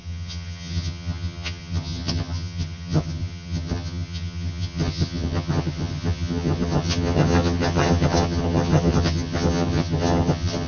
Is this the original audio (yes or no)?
no